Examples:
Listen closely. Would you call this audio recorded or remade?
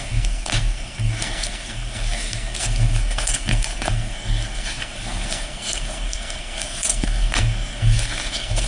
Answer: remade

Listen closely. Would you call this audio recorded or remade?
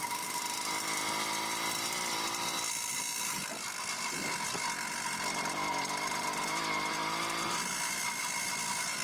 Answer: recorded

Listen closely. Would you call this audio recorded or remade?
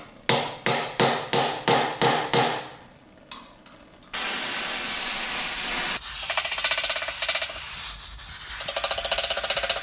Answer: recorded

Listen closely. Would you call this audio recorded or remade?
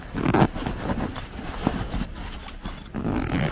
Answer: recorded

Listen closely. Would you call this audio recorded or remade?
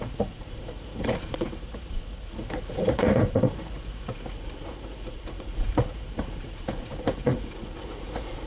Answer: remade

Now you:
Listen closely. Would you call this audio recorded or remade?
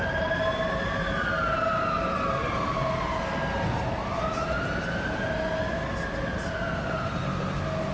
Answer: recorded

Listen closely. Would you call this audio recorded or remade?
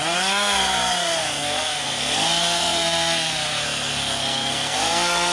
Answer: remade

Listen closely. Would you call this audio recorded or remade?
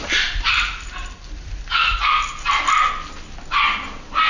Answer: recorded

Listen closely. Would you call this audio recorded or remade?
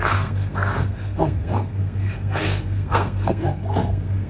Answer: remade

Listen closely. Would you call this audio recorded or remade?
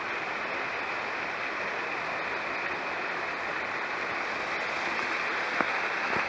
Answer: recorded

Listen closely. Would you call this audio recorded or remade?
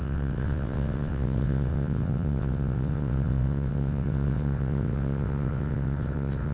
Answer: remade